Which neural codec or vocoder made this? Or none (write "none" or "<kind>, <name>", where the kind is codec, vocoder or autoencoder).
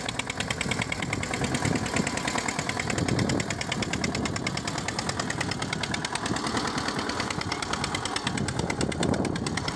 none